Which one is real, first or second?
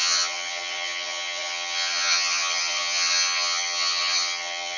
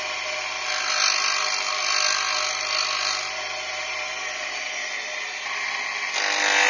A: second